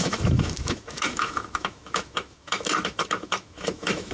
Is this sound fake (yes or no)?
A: yes